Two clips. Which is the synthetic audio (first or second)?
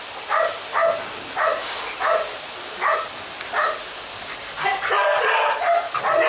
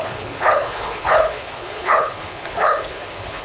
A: second